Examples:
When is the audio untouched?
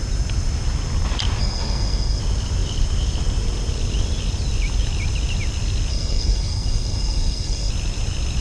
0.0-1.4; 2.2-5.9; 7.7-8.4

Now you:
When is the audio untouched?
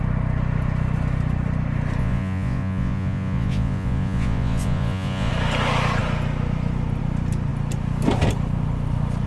0.0-2.0; 5.3-9.3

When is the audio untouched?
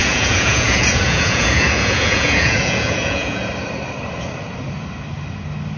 3.5-5.8